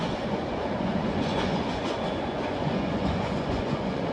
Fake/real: fake